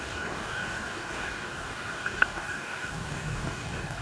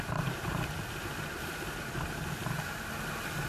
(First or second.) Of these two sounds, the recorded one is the second